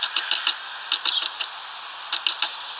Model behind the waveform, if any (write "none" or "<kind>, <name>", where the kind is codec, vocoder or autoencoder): none